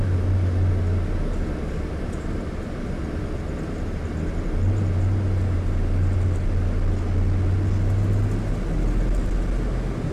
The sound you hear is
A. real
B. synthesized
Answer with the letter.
A